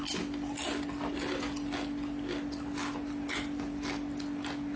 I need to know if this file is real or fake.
real